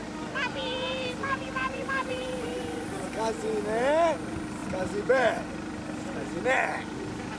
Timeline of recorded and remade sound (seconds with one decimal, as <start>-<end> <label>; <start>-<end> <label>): 0.0-1.6 recorded; 1.6-3.2 remade; 3.2-4.6 recorded; 4.6-5.5 remade; 5.5-7.4 recorded